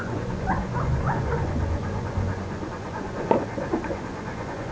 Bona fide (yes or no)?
no